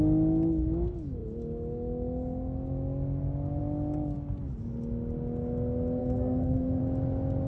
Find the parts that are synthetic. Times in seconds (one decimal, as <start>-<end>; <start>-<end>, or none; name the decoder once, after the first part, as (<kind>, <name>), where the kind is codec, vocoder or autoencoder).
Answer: 6.0-6.8 (codec, SNAC)